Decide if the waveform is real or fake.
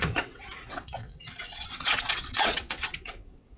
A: fake